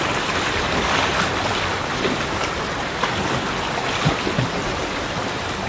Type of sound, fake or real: real